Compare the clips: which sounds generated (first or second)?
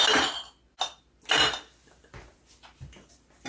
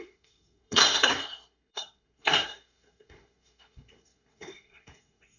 second